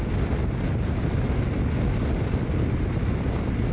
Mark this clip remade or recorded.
recorded